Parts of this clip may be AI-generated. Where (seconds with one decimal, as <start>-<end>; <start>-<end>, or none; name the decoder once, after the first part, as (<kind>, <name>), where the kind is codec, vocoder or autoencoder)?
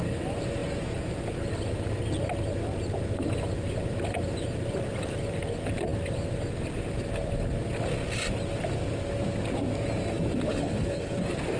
10.5-11.2 (codec, HILCodec)